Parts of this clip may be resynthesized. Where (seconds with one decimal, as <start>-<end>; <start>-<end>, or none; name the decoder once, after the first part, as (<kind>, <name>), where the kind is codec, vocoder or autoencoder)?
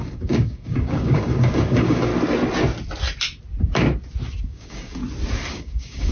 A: 0.0-2.1 (codec, DAC); 4.4-5.0; 5.5-6.1